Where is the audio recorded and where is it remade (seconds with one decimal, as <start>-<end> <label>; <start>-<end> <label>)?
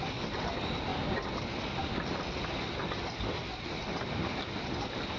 0.0-3.5 recorded; 3.5-4.5 remade; 4.5-5.2 recorded